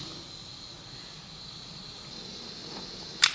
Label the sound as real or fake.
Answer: real